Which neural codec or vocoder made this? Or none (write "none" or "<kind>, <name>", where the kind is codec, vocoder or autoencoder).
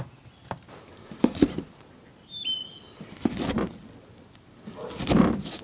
none